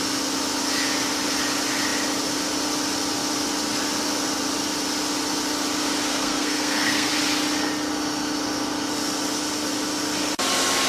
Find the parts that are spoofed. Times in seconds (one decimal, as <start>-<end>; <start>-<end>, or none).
6.1-7.1